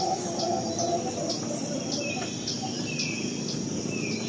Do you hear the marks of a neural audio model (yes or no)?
no